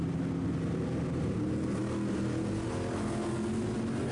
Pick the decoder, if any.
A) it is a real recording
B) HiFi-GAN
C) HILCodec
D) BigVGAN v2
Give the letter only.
A